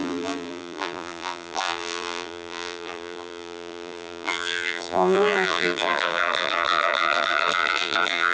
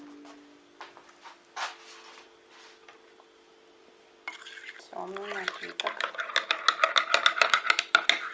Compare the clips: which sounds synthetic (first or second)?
first